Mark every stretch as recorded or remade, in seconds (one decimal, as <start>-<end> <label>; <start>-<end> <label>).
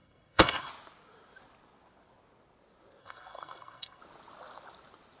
0.0-0.7 remade; 0.7-3.0 recorded; 3.0-4.0 remade; 4.0-5.2 recorded